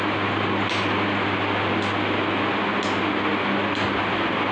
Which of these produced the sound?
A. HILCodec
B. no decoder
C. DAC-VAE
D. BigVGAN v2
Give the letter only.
B